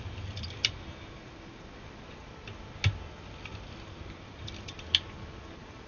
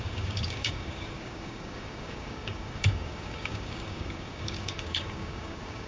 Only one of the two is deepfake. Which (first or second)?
second